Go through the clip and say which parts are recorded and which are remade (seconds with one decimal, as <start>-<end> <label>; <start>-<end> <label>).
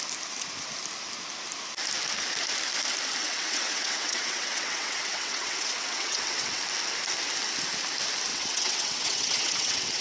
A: 0.0-3.2 recorded; 3.2-6.6 remade; 6.6-8.3 recorded; 8.3-10.0 remade